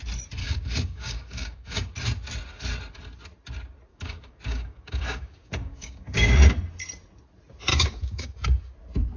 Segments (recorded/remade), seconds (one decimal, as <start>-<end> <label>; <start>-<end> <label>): 0.0-0.4 recorded; 0.4-1.9 remade; 1.9-3.9 recorded; 3.9-6.3 remade; 6.3-7.7 recorded; 7.7-8.4 remade; 8.4-9.2 recorded